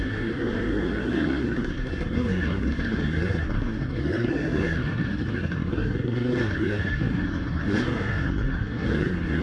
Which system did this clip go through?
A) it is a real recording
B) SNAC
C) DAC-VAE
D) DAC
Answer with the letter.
B